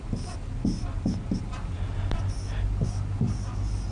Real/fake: real